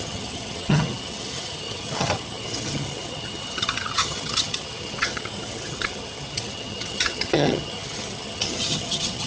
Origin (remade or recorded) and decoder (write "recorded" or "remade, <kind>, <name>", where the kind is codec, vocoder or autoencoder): remade, vocoder, HiFi-GAN